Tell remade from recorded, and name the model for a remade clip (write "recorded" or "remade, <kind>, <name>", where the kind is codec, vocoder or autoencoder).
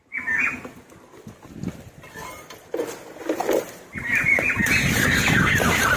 recorded